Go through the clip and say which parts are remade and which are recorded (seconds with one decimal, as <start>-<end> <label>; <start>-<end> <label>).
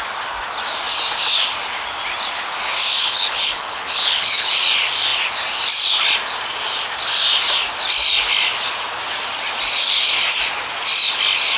0.0-3.0 recorded; 3.0-4.5 remade; 4.5-11.6 recorded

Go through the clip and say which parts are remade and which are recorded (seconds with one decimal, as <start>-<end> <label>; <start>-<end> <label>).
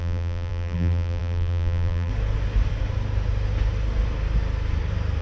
0.0-2.1 remade; 2.1-5.2 recorded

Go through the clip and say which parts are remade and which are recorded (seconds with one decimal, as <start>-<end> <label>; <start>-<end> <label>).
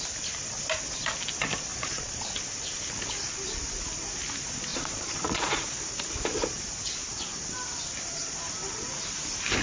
0.0-1.7 recorded; 1.7-2.3 remade; 2.3-4.7 recorded; 4.7-5.6 remade; 5.6-9.6 recorded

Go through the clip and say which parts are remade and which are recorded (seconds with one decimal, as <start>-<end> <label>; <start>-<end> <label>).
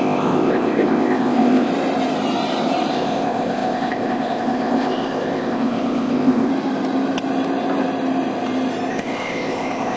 0.0-1.7 remade; 1.7-2.9 recorded; 2.9-6.5 remade; 6.5-8.9 recorded; 8.9-10.0 remade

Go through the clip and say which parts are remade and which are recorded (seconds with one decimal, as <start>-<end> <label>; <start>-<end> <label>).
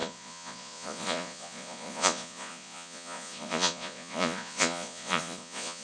0.0-5.8 remade